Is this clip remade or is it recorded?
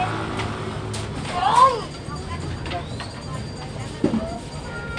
recorded